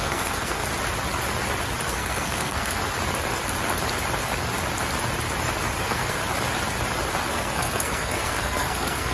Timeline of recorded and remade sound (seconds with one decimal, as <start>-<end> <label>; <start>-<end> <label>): 0.0-0.6 remade; 0.6-1.9 recorded; 1.9-2.8 remade; 2.8-5.8 recorded; 5.8-6.2 remade; 6.2-7.3 recorded; 7.3-9.1 remade

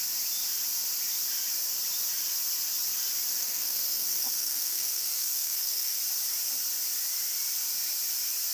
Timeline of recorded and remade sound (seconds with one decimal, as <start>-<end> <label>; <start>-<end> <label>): 0.0-3.4 recorded; 3.4-6.0 remade; 6.0-8.5 recorded

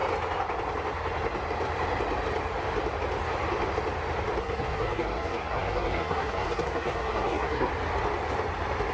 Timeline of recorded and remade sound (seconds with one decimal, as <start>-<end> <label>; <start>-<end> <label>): 0.0-4.4 recorded; 4.4-7.7 remade; 7.7-8.9 recorded

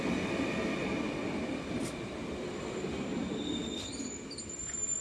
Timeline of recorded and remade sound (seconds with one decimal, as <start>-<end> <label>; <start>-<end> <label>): 0.0-5.0 recorded

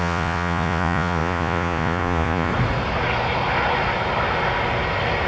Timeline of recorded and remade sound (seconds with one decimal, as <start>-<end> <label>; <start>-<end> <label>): 0.0-2.5 remade; 2.5-5.3 recorded

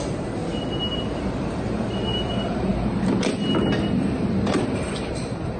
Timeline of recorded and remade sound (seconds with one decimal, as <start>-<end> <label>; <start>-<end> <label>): 0.0-0.4 remade; 0.4-1.2 recorded; 1.2-2.7 remade; 2.7-3.9 recorded; 3.9-5.6 remade

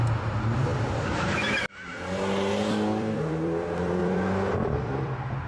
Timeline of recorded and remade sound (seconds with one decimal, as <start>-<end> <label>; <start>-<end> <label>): 0.0-0.7 remade; 0.7-2.5 recorded; 2.5-5.5 remade

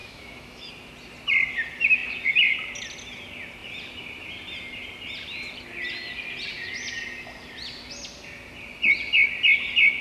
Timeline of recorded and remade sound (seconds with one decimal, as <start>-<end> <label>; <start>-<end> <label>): 0.0-0.7 remade; 0.7-10.0 recorded